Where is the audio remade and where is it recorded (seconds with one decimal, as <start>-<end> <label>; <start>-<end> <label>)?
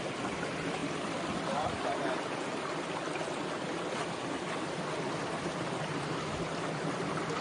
0.0-7.4 recorded